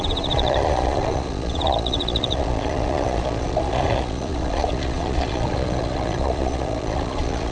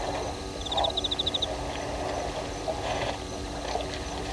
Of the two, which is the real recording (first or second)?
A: second